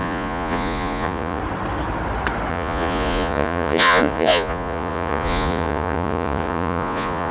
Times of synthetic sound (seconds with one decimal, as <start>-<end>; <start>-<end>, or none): 0.0-1.4; 2.5-7.3